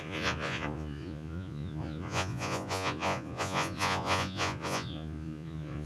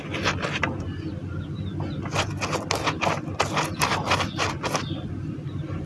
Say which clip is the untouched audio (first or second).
second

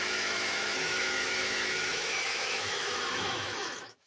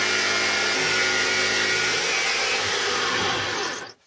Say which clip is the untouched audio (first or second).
second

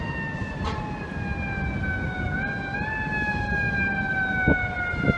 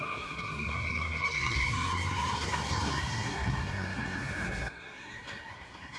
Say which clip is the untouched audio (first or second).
first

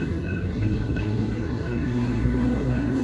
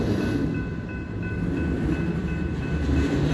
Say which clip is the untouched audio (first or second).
second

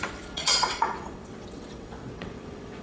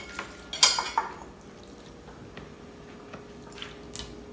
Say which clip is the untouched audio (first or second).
second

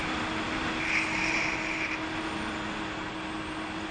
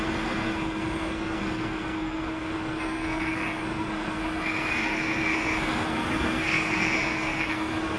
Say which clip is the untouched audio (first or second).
first